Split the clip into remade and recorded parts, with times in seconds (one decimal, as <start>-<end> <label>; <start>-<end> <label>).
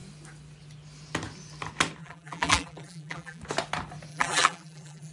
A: 0.0-2.0 recorded; 2.0-3.4 remade; 3.4-4.1 recorded; 4.1-5.1 remade